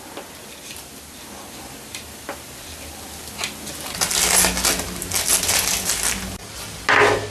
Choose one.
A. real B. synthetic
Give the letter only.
A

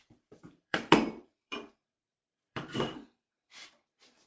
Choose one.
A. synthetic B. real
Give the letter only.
A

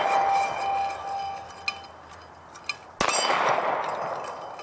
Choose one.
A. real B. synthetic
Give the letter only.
A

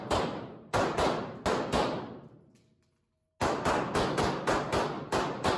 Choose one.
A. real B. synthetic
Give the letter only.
A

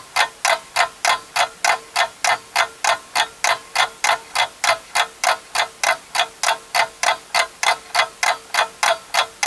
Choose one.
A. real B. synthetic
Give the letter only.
A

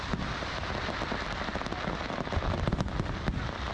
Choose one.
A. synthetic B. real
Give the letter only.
A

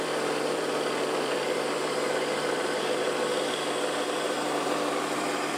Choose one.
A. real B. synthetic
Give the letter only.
B